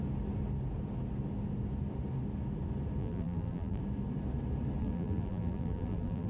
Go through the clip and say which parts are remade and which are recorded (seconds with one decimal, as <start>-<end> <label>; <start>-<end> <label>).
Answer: 0.0-3.0 recorded; 3.0-3.8 remade; 3.8-4.8 recorded; 4.8-6.3 remade